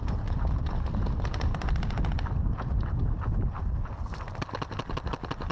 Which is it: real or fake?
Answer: real